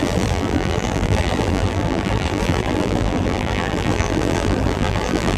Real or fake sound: fake